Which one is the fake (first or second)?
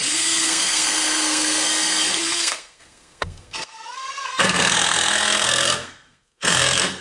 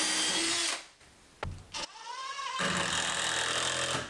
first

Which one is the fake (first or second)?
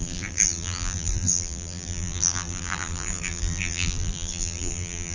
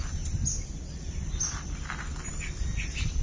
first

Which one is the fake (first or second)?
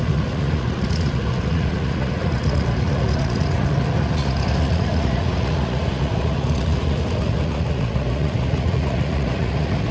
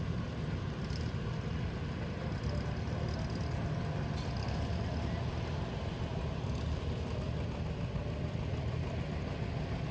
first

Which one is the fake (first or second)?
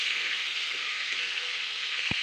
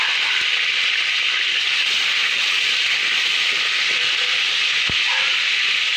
first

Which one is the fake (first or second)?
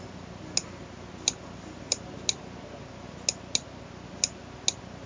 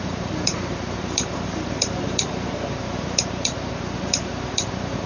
second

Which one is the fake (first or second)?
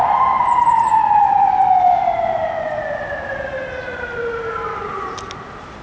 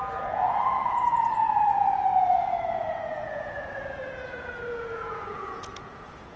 second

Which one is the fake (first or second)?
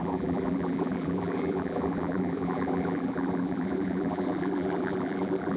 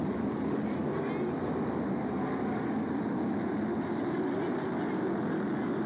first